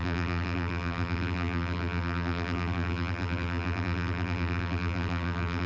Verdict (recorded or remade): remade